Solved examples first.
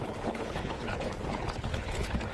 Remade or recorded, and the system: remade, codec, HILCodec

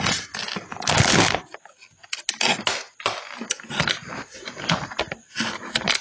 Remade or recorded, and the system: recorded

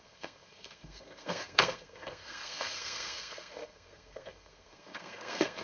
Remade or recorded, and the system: remade, codec, SNAC